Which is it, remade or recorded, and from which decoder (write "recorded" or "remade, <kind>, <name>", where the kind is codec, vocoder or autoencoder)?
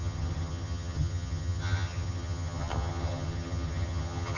remade, vocoder, HiFi-GAN